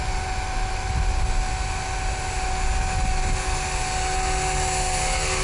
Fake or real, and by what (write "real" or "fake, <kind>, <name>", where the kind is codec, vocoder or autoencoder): real